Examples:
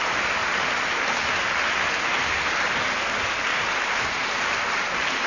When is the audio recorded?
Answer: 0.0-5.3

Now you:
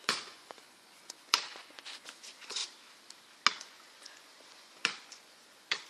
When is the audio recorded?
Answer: 2.6-3.6

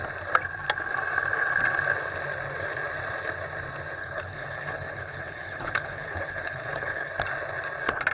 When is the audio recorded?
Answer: 0.0-4.0; 7.1-8.1

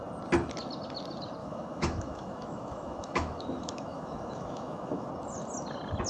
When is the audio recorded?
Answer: 0.0-1.4; 5.1-6.1

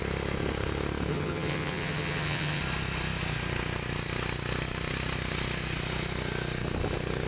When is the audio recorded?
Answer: 0.0-1.1; 2.6-7.3

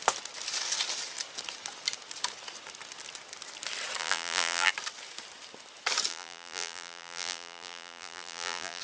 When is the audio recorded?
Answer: 0.0-4.0; 4.7-6.1

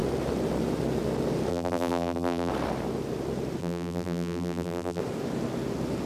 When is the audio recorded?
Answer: 0.0-1.5; 2.5-3.6; 5.0-6.1

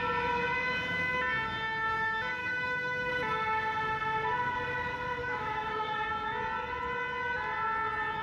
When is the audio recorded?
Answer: 0.0-2.4; 3.1-5.2; 6.1-8.2